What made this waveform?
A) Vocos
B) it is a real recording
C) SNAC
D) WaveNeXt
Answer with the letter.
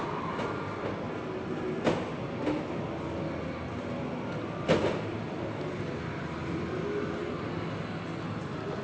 B